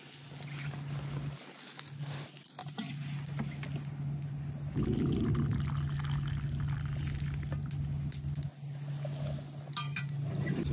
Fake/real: real